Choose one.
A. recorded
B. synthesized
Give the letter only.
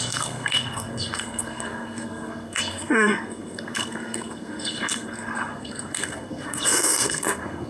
B